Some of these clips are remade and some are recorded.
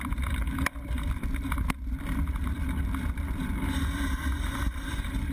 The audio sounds remade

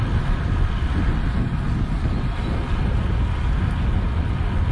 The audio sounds recorded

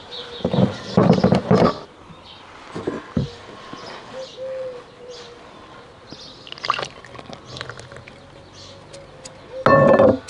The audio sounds recorded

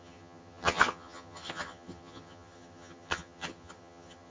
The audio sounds remade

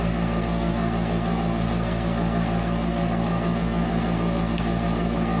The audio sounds remade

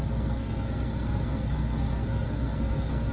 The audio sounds remade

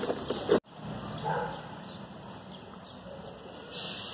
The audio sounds recorded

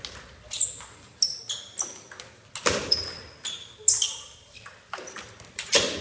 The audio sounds recorded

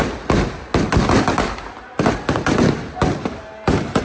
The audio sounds recorded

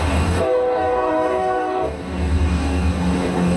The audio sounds remade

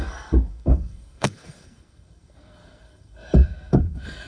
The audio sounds remade